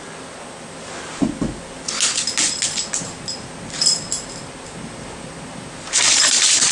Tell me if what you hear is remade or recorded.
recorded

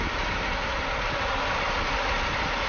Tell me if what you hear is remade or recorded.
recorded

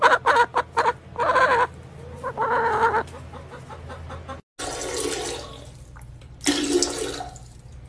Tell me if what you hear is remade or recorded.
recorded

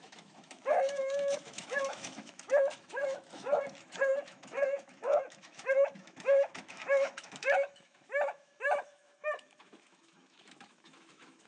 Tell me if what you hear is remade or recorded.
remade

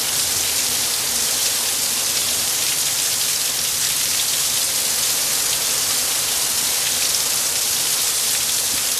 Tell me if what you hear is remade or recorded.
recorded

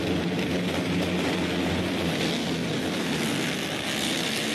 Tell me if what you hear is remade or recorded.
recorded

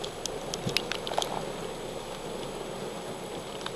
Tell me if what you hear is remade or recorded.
recorded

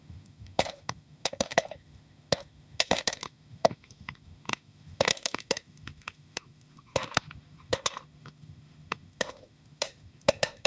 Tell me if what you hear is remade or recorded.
remade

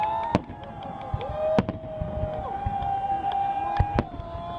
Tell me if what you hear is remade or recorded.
recorded